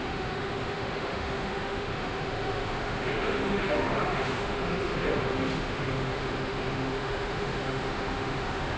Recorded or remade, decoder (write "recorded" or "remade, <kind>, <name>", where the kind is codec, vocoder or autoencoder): remade, autoencoder, DAC-VAE